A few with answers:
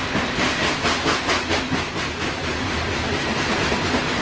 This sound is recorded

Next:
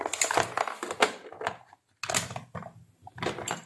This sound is recorded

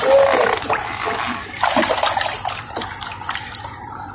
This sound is recorded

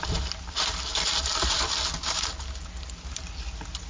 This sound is recorded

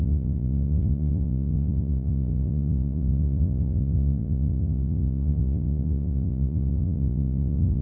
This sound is remade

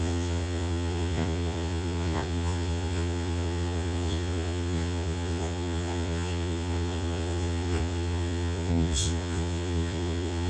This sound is remade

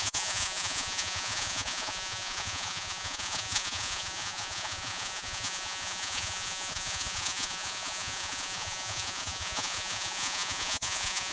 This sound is remade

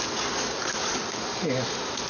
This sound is recorded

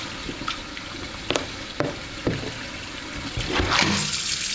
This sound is recorded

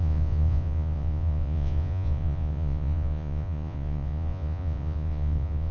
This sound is remade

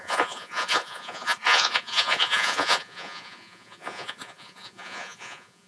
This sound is remade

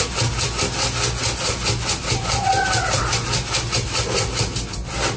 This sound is recorded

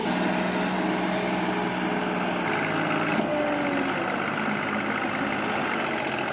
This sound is recorded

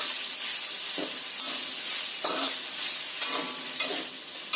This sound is recorded